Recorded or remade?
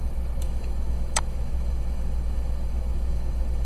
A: remade